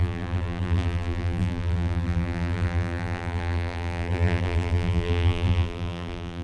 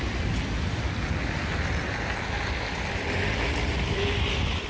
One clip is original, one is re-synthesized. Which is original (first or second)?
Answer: second